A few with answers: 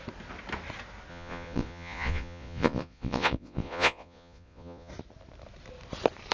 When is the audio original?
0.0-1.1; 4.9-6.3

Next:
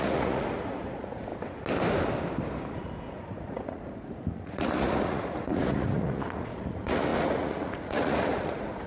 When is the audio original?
1.3-2.7

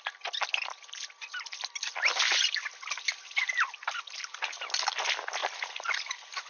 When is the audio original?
0.0-6.5

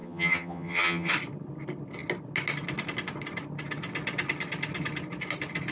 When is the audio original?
1.1-5.7

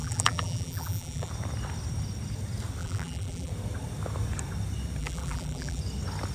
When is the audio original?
1.3-2.8; 3.5-5.0; 5.8-6.3

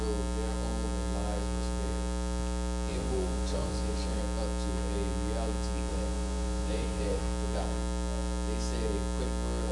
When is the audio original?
0.0-2.9; 4.2-5.9; 7.2-9.7

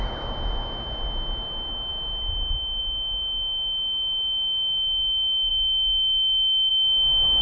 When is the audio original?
0.0-7.4